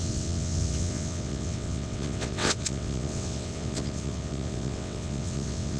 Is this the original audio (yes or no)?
no